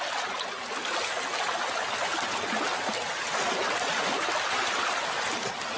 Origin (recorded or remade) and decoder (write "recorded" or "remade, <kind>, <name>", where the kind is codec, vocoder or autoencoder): recorded